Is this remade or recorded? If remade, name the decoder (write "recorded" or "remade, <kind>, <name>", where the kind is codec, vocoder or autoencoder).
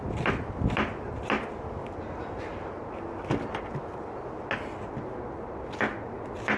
recorded